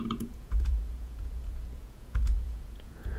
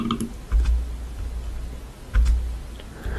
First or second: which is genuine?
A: second